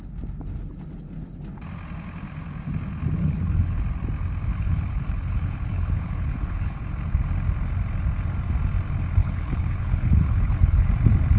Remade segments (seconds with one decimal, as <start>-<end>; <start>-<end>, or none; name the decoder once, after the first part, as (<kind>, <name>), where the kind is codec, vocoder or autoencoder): 3.2-3.8 (codec, HILCodec); 4.5-6.8; 9.2-10.9